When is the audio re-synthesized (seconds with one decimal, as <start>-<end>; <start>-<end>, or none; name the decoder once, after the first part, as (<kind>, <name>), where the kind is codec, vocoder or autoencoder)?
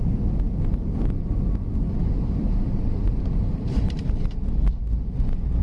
2.0-4.1 (vocoder, BigVGAN v2)